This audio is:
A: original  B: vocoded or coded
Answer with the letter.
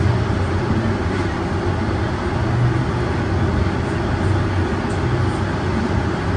A